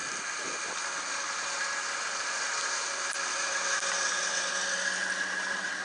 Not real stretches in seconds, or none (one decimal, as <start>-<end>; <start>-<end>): none